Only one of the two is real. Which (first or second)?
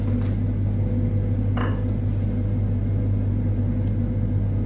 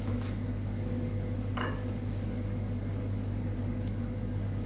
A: first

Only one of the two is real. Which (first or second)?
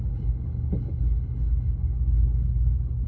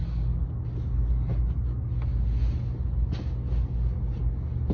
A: second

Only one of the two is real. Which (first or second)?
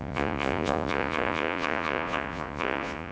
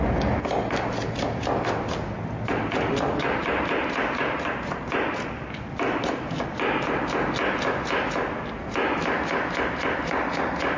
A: second